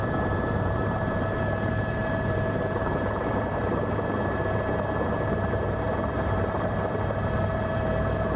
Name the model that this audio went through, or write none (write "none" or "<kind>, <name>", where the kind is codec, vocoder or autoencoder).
vocoder, BigVGAN v2